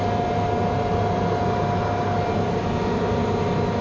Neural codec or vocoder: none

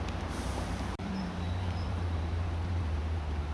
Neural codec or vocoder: vocoder, BigVGAN v2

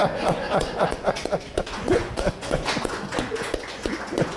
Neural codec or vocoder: vocoder, Vocos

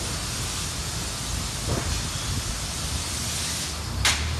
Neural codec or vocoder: none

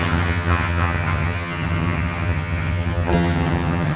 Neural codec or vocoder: vocoder, HiFi-GAN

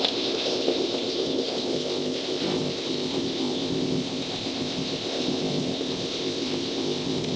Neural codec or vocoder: codec, ZipCodec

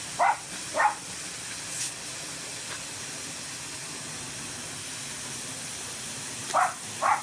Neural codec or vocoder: none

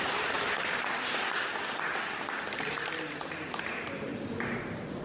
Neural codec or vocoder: none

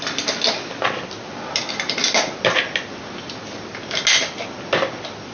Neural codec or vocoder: none